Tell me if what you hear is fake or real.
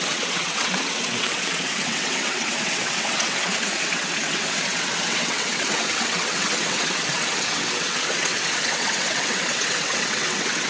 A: fake